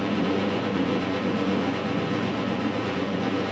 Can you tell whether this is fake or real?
fake